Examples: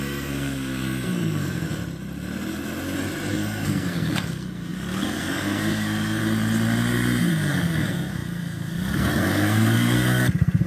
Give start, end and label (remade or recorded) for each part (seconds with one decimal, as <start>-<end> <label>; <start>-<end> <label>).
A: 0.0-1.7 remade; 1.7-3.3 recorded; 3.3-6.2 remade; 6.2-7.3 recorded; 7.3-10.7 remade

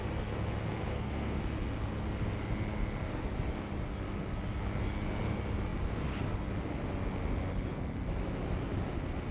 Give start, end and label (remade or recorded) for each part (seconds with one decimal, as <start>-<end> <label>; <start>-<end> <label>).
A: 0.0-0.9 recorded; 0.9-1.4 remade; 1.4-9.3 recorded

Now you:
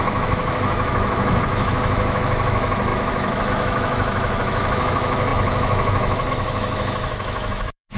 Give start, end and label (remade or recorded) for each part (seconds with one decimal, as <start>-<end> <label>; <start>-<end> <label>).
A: 0.0-8.0 remade